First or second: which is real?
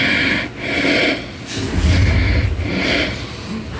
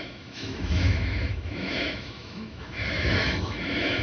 first